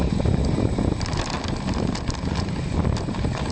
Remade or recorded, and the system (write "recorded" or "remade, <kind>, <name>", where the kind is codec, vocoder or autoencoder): remade, vocoder, BigVGAN v2